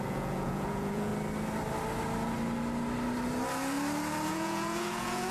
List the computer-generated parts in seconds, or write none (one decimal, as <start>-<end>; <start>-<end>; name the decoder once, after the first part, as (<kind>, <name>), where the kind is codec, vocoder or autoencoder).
0.0-1.1 (vocoder, Vocos); 4.3-5.3